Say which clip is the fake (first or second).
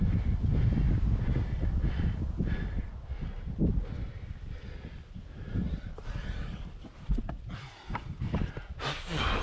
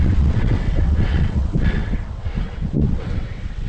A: second